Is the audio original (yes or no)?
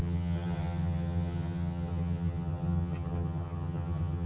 no